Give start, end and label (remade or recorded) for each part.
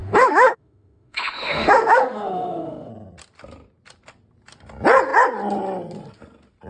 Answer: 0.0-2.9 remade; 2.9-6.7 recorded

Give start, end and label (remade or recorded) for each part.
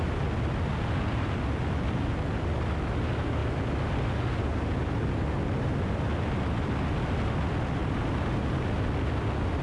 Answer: 0.0-9.6 recorded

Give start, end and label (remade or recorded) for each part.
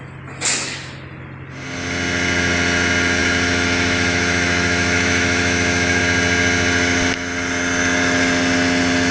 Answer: 0.0-3.2 recorded; 3.2-6.0 remade; 6.0-9.1 recorded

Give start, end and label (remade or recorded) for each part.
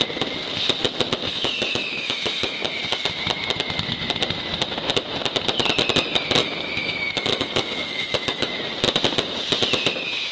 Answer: 0.0-1.3 recorded; 1.3-2.8 remade; 2.8-6.4 recorded; 6.4-8.5 remade; 8.5-10.3 recorded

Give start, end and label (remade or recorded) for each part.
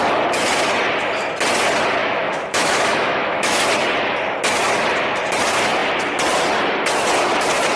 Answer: 0.0-2.0 recorded; 2.0-3.6 remade; 3.6-7.8 recorded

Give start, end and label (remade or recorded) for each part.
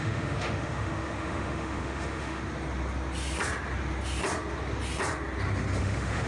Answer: 0.0-2.4 remade; 2.4-5.8 recorded; 5.8-6.3 remade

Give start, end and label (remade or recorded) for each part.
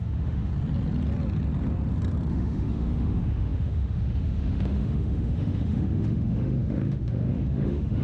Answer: 0.0-0.5 remade; 0.5-2.3 recorded; 2.3-8.0 remade